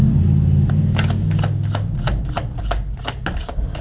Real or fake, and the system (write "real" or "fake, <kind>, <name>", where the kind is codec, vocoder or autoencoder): real